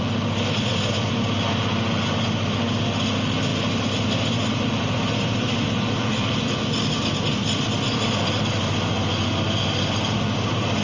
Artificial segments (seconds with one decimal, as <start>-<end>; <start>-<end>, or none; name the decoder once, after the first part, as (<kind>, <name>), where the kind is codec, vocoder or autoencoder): none